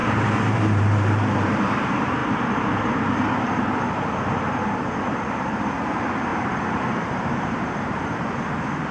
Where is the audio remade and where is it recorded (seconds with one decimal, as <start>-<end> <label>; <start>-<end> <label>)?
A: 0.0-6.3 remade; 6.3-6.9 recorded; 6.9-8.9 remade